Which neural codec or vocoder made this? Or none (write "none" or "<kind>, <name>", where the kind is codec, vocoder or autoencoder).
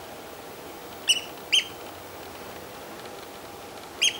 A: none